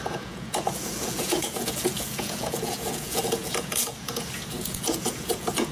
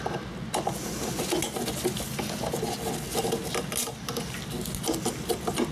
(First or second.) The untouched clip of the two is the second